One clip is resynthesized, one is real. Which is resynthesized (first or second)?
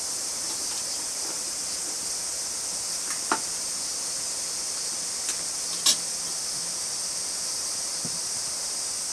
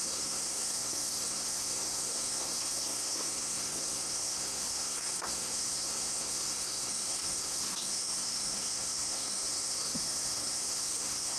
second